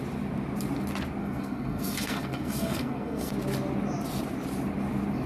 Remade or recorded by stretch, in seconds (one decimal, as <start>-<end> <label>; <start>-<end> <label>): 0.0-1.2 recorded; 1.2-3.3 remade; 3.3-5.3 recorded